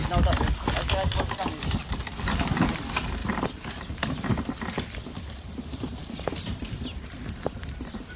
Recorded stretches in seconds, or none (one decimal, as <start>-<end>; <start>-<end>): 3.2-4.5